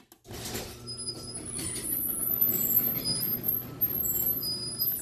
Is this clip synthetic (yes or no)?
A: no